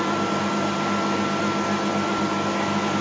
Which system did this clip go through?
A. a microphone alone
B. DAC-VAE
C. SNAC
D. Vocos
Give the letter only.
A